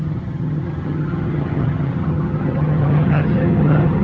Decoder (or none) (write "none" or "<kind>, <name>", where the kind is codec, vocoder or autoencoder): vocoder, HiFi-GAN